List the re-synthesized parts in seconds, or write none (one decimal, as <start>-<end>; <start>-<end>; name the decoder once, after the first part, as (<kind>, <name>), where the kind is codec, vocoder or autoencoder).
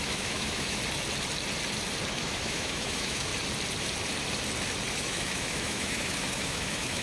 0.0-0.8 (autoencoder, DAC-VAE); 2.1-3.3; 4.9-7.0